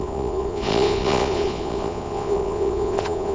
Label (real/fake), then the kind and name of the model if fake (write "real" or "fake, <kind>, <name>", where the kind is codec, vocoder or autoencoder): fake, vocoder, Vocos